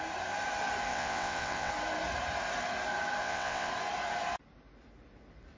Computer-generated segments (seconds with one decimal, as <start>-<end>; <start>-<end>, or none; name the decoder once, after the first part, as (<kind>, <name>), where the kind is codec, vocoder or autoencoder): 0.9-1.7 (vocoder, WaveNeXt); 3.2-3.7